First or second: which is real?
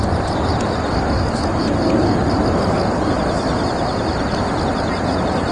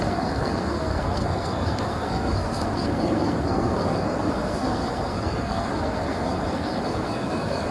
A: first